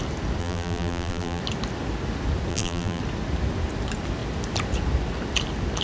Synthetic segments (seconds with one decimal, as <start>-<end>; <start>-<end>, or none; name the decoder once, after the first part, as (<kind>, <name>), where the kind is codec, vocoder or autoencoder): 0.4-1.4 (vocoder, BigVGAN v2); 2.5-3.0